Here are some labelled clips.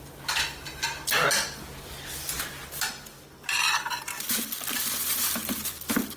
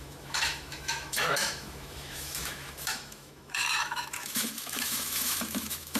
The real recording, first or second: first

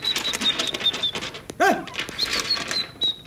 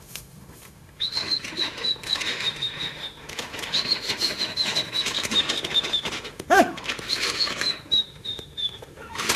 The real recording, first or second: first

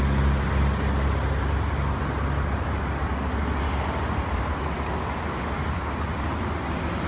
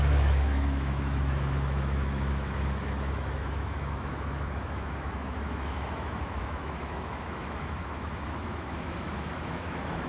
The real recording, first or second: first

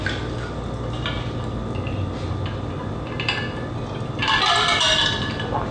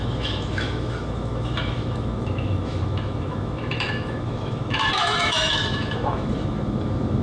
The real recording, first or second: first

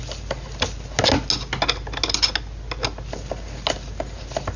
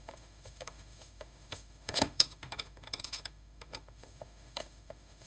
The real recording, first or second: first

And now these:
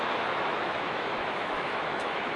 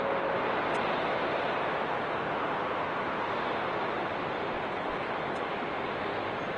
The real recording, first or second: second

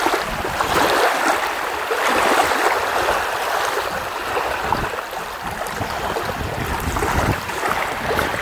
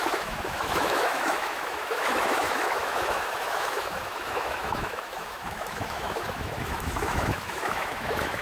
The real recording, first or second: first